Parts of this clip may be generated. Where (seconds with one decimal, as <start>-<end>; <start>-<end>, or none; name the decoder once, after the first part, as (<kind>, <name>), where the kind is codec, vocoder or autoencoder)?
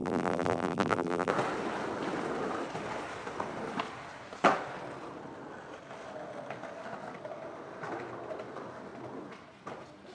0.0-1.3 (vocoder, BigVGAN v2)